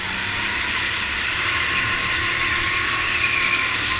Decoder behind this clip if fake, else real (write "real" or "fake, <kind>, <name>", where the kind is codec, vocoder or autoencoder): real